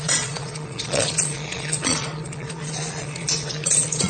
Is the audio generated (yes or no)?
yes